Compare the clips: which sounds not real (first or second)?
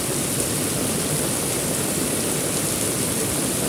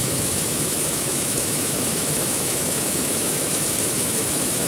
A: second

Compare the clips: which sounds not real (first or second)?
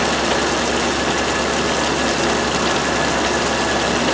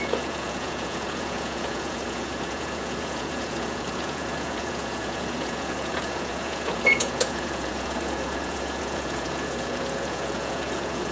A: second